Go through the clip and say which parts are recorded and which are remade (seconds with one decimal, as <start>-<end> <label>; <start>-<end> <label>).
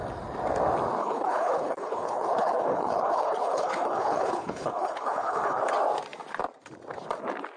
0.0-1.0 recorded; 1.0-5.6 remade; 5.6-7.6 recorded